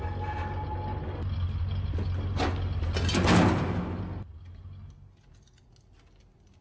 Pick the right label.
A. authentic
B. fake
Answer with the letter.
A